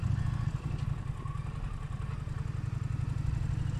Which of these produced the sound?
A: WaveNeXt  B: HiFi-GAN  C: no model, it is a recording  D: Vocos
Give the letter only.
C